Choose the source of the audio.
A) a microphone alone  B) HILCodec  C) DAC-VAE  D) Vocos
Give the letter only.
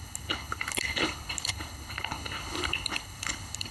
B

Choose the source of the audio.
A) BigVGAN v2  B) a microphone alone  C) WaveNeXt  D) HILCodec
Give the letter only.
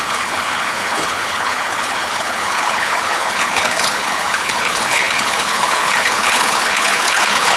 D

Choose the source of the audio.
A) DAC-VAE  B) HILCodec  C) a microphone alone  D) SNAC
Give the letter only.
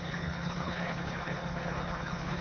B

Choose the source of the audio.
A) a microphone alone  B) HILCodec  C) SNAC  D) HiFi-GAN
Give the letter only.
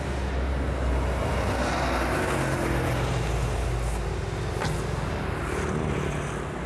A